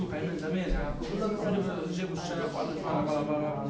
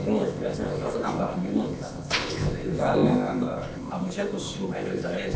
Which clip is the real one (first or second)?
first